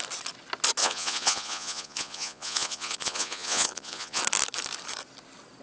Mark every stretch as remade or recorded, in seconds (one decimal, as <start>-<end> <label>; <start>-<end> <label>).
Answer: 0.0-0.8 recorded; 0.8-4.2 remade; 4.2-5.6 recorded